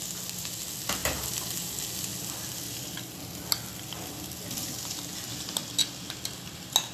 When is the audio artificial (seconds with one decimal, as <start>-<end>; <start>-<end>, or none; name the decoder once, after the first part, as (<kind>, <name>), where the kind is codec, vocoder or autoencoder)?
none